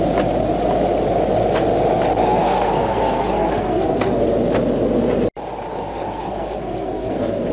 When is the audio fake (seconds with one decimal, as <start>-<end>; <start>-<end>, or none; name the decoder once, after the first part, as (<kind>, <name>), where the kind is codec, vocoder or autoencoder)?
2.2-4.2 (codec, SNAC); 5.7-7.5